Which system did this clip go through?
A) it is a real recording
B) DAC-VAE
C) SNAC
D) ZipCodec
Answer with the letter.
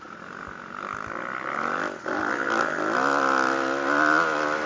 A